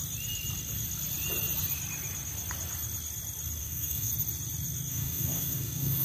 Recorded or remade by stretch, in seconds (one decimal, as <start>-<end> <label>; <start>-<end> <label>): 0.0-3.6 recorded; 3.6-4.1 remade; 4.1-4.9 recorded; 4.9-6.0 remade